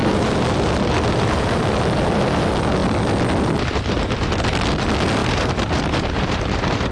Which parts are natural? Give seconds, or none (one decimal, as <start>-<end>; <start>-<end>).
0.0-5.2